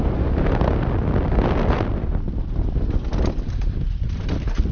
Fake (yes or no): no